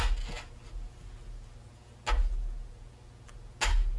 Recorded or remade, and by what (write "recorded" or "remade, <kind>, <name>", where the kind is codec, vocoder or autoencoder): recorded